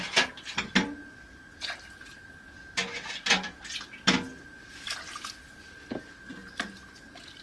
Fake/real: real